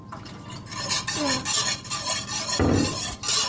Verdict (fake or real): real